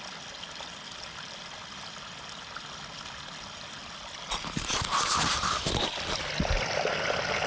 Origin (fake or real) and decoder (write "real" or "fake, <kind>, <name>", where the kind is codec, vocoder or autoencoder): real